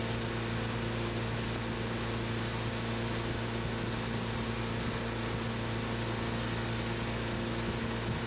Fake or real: real